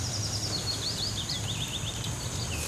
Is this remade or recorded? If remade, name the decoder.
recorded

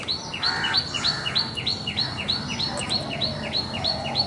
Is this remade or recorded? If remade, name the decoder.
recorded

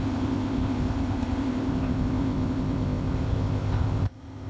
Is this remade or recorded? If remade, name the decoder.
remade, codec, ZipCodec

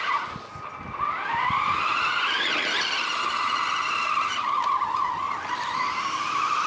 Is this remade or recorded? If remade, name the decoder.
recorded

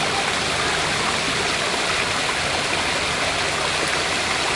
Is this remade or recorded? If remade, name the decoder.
recorded